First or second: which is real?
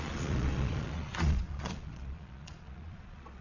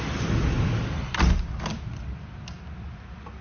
second